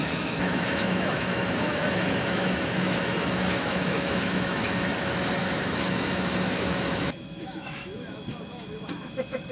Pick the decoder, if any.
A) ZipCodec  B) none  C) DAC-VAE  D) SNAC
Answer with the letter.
C